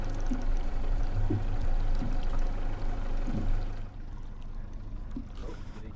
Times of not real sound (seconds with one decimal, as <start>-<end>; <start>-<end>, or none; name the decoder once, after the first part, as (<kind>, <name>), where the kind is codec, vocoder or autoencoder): 0.5-2.3 (vocoder, BigVGAN v2); 5.4-6.0